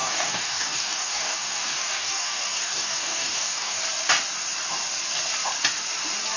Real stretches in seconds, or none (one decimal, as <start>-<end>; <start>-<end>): 3.8-6.4